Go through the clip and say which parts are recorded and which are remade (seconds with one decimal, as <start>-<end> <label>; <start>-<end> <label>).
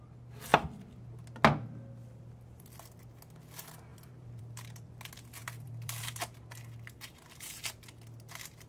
0.0-3.9 recorded; 3.9-5.0 remade; 5.0-5.4 recorded; 5.4-6.2 remade; 6.2-8.7 recorded